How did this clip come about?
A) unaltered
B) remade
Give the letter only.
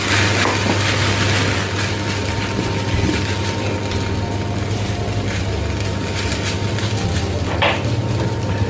A